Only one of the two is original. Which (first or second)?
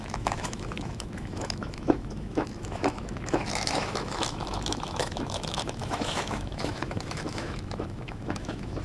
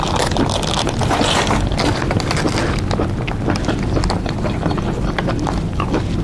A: second